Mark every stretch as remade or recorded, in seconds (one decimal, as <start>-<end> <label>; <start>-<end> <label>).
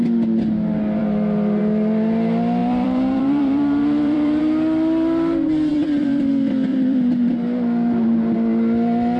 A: 0.0-2.6 recorded; 2.6-4.4 remade; 4.4-5.7 recorded; 5.7-6.3 remade; 6.3-6.7 recorded; 6.7-7.3 remade; 7.3-9.2 recorded